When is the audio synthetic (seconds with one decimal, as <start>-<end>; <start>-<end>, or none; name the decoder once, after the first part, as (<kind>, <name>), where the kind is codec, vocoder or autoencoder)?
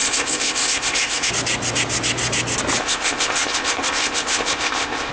0.0-1.3 (codec, ZipCodec); 2.8-5.1